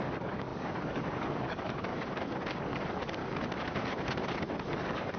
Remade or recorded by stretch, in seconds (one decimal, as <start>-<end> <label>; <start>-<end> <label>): 0.0-1.9 remade; 1.9-2.6 recorded; 2.6-3.2 remade; 3.2-4.7 recorded; 4.7-5.2 remade